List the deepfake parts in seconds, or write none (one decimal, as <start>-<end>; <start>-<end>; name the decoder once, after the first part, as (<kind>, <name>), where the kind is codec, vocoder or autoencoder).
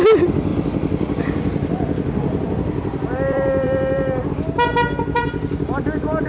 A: 0.5-4.3 (vocoder, BigVGAN v2)